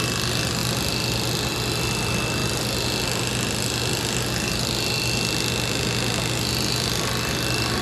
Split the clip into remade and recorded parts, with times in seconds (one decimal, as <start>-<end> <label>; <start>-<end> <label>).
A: 0.0-7.8 recorded